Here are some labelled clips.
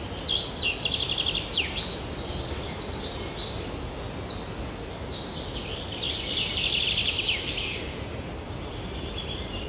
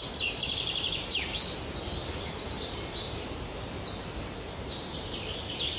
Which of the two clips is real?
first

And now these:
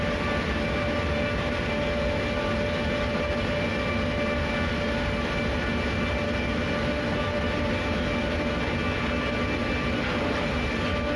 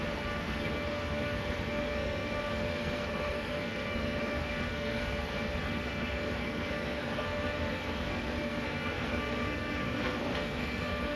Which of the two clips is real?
first